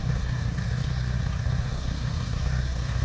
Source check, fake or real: fake